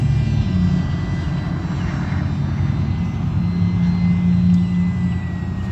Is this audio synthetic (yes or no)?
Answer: no